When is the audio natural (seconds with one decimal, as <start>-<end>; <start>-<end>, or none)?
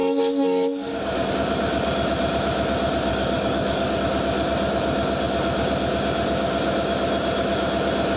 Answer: 1.3-3.1; 4.0-8.2